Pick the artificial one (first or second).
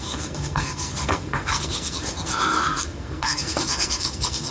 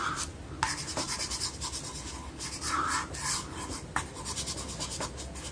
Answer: first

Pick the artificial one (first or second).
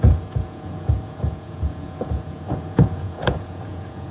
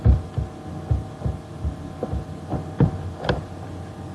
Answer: first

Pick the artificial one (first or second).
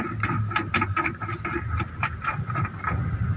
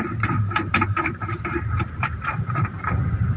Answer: second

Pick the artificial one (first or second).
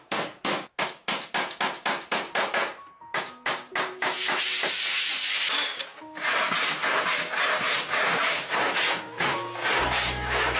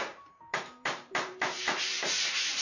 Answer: second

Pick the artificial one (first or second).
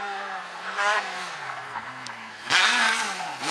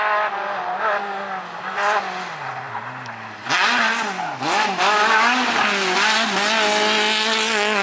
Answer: first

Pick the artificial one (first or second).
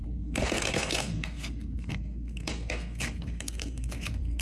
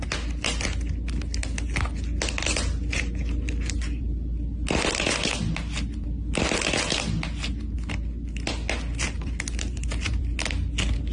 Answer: first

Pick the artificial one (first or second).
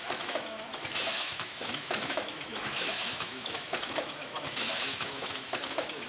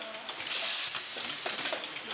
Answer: first